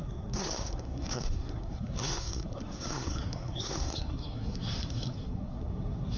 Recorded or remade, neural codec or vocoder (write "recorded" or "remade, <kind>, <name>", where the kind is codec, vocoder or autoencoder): remade, codec, SNAC